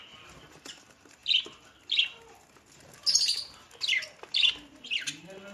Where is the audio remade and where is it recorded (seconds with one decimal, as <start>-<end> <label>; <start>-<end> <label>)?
0.0-5.5 recorded